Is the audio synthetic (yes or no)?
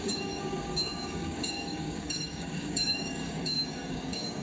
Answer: yes